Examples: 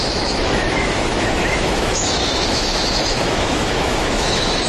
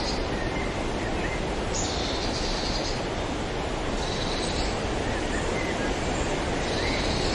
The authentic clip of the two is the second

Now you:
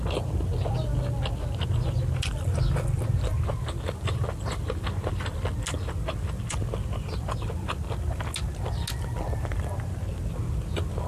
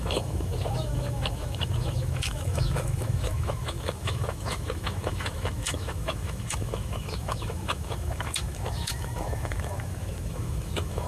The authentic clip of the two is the first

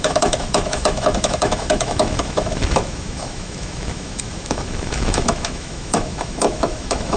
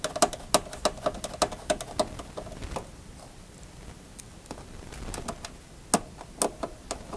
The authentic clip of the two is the second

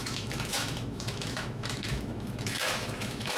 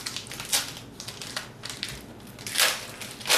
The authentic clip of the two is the second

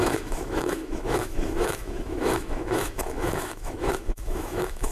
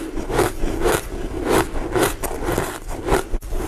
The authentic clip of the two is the second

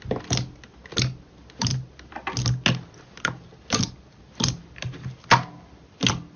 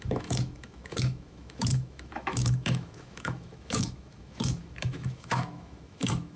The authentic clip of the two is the first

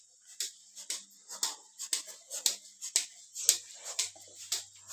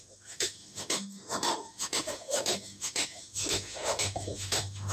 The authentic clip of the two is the first